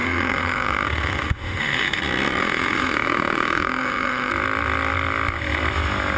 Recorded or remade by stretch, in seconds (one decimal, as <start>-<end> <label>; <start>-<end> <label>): 0.0-2.0 remade; 2.0-2.4 recorded; 2.4-4.3 remade; 4.3-6.2 recorded